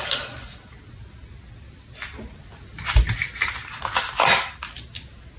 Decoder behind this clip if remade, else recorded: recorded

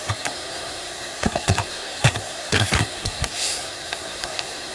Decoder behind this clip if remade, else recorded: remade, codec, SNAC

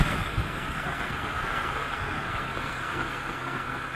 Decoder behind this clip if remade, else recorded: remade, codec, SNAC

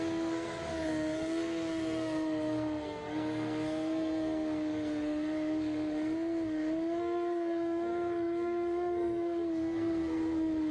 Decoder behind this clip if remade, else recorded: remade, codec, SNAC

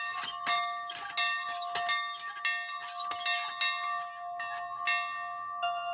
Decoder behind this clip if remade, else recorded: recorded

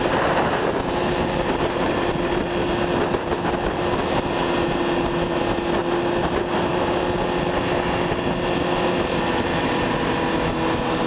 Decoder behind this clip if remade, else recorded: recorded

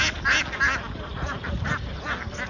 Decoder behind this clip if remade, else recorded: recorded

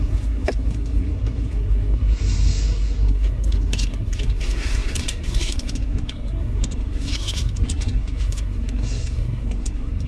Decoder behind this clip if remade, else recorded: remade, codec, SNAC